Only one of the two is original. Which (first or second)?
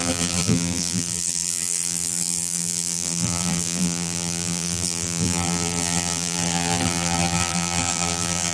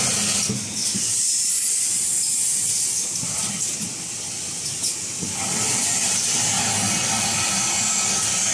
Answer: second